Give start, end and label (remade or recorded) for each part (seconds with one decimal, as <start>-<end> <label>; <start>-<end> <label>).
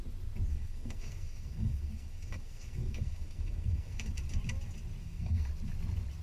0.0-0.5 recorded; 0.5-4.1 remade; 4.1-5.0 recorded; 5.0-5.5 remade; 5.5-6.2 recorded